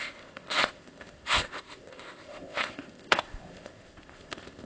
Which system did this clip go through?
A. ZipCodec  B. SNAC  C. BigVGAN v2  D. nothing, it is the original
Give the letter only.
A